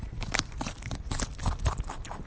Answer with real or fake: fake